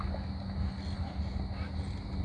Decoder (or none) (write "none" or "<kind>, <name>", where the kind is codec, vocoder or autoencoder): none